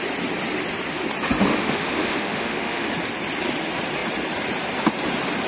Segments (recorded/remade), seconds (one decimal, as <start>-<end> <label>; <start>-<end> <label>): 0.0-1.5 recorded; 1.5-2.9 remade; 2.9-5.5 recorded